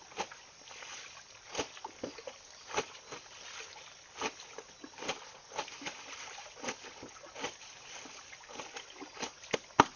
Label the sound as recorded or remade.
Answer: recorded